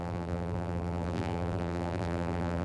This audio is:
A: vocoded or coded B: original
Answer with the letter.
A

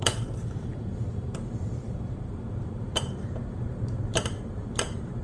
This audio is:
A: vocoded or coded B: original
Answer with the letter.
A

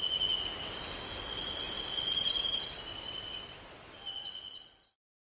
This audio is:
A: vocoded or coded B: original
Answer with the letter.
B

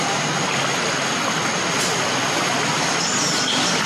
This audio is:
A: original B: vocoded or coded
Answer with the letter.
B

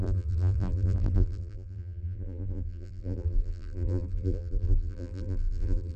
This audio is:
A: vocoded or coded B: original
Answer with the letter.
A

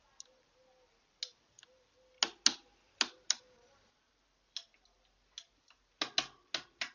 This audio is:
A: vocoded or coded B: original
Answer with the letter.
B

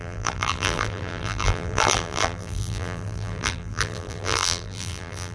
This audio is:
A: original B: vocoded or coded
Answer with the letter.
B